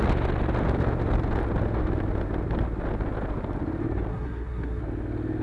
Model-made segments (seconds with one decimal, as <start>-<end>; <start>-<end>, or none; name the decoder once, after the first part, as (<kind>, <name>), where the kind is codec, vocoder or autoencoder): 4.1-4.8 (codec, SNAC)